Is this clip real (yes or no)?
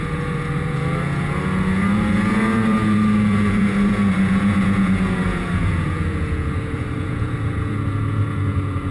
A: no